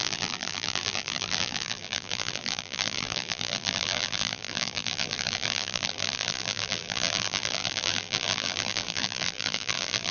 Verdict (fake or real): fake